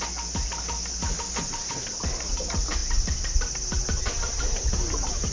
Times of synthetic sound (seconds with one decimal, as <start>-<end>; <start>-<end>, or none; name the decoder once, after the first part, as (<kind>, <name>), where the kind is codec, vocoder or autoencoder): none